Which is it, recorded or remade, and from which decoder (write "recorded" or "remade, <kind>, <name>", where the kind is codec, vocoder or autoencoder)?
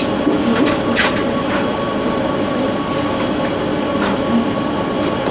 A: recorded